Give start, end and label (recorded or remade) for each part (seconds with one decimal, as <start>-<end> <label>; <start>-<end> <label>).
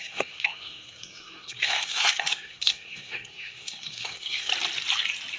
0.0-4.5 remade; 4.5-5.4 recorded